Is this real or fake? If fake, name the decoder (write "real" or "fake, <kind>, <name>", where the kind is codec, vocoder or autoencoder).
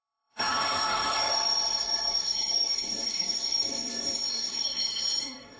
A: fake, codec, SNAC